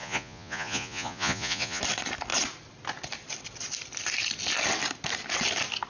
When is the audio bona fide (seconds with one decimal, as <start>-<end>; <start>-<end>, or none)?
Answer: 1.8-5.9